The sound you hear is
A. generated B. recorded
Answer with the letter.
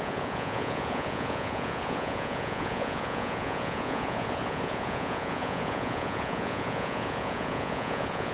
A